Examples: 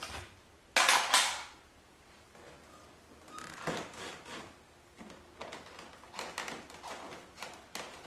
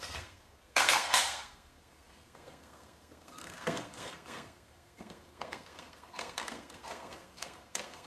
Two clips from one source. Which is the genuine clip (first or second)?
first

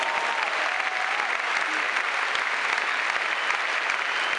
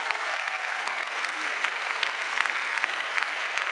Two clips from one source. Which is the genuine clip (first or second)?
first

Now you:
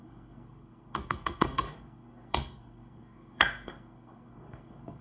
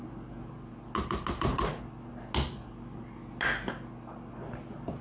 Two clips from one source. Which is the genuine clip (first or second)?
second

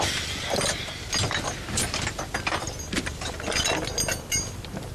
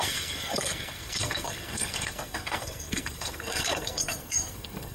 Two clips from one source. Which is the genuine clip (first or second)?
first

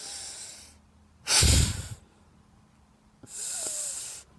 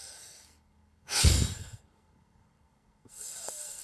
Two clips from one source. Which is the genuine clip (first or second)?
first